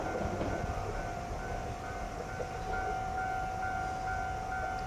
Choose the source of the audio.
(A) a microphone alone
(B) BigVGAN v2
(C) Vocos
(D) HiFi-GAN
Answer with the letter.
A